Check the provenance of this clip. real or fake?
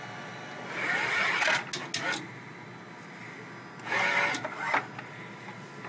real